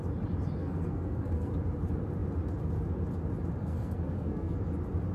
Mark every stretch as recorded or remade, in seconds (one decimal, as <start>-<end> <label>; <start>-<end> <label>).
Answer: 0.0-0.6 recorded; 0.6-1.5 remade; 1.5-3.6 recorded; 3.6-4.6 remade; 4.6-5.1 recorded